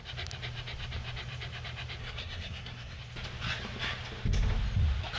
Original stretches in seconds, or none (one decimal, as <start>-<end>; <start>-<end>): 0.0-2.0; 3.0-5.2

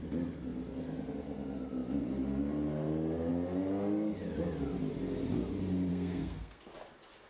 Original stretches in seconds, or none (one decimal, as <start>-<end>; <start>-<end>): 0.0-5.9; 6.6-7.3